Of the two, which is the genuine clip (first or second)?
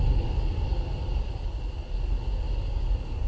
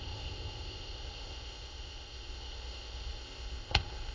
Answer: first